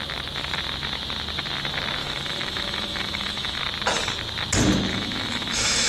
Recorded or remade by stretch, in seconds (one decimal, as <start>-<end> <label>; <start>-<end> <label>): 0.0-2.0 recorded; 2.0-3.6 remade; 3.6-4.9 recorded; 4.9-5.9 remade